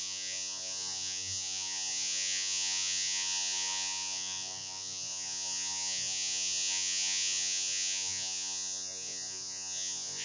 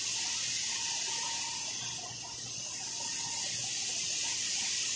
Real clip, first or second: second